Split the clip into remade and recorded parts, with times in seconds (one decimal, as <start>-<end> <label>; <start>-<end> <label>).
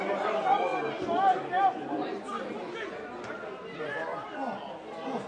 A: 0.0-5.3 recorded